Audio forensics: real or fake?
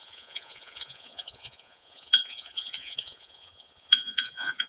fake